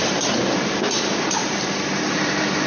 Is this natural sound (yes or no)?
no